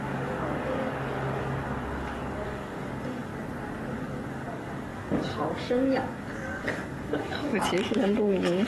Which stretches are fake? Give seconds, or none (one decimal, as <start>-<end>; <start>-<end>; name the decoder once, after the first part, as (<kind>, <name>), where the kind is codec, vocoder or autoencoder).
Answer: 0.0-3.3 (codec, DAC); 3.9-8.7